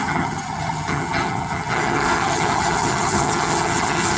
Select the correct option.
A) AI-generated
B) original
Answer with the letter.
A